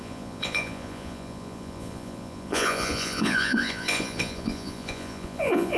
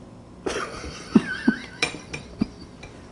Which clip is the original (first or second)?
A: second